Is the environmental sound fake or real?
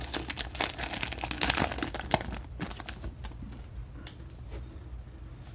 real